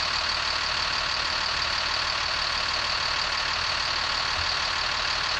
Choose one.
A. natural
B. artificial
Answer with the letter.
A